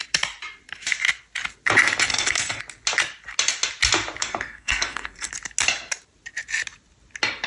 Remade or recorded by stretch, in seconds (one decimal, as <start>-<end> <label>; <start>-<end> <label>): 0.0-2.1 recorded; 2.1-2.6 remade; 2.6-4.2 recorded; 4.2-5.3 remade; 5.3-7.5 recorded